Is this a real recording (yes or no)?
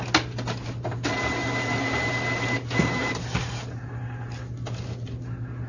yes